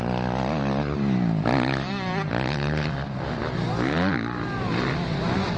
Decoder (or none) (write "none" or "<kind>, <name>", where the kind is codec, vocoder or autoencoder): none